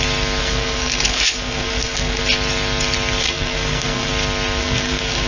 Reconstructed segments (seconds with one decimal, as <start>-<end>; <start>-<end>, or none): 0.4-2.2; 3.2-4.1; 4.6-5.3